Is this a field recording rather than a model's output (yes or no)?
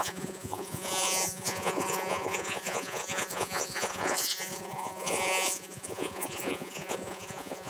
no